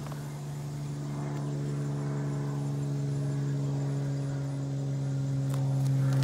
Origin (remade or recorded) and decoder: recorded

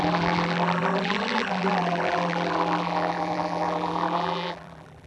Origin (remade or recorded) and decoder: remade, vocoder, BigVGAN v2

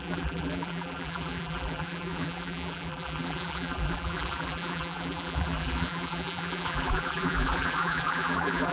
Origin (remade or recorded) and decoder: remade, vocoder, BigVGAN v2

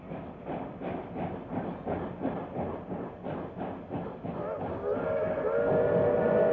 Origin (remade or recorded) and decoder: recorded